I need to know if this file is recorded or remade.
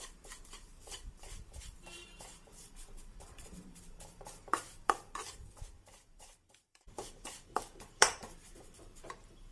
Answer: remade